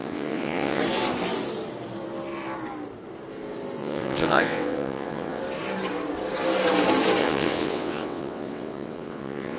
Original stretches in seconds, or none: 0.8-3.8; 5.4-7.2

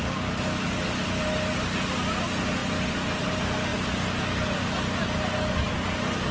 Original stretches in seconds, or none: 0.0-6.3

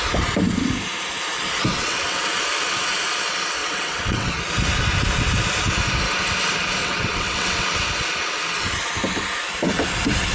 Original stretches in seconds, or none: 0.0-1.7; 2.2-3.6; 4.3-6.8; 7.6-10.3